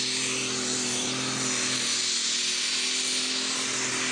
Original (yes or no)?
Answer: yes